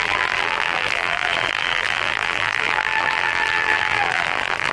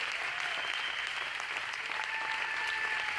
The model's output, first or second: first